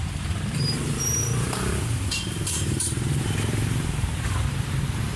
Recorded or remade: remade